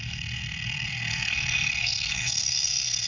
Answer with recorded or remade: remade